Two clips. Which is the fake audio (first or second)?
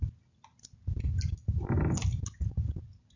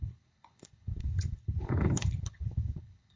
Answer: second